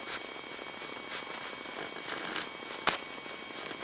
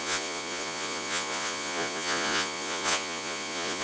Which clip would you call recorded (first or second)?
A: first